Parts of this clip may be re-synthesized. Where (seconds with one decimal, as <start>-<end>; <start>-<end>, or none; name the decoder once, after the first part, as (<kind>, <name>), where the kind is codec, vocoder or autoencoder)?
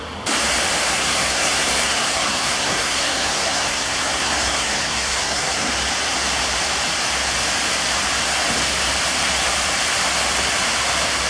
0.9-5.7 (codec, SNAC)